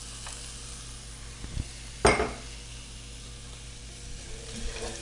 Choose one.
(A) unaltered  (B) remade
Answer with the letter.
A